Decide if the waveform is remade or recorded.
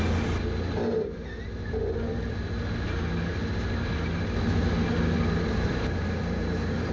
recorded